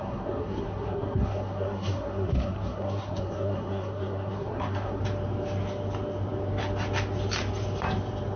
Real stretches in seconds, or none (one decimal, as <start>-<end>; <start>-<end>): 5.0-8.4